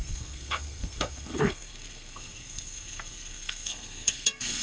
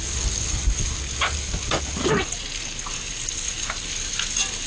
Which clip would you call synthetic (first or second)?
first